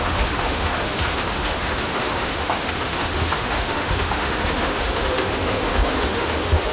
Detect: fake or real fake